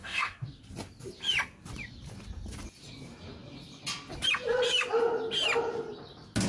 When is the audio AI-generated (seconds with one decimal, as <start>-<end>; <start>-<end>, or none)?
0.0-0.6